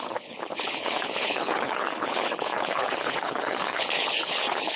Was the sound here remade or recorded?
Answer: remade